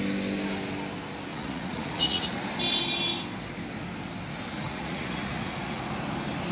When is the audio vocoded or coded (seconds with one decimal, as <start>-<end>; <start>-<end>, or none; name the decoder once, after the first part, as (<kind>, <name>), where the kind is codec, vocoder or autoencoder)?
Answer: 1.3-2.4 (vocoder, Vocos); 4.5-5.8